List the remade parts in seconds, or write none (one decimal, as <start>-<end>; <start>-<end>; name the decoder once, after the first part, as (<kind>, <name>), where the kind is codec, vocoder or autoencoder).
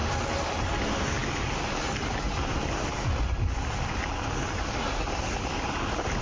none